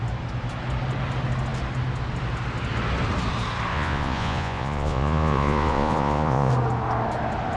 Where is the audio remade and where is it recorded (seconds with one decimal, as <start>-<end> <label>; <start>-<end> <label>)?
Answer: 0.0-3.7 recorded; 3.7-6.5 remade; 6.5-7.6 recorded